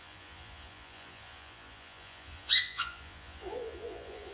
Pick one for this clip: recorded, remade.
remade